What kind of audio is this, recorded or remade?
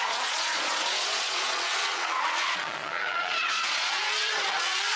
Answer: remade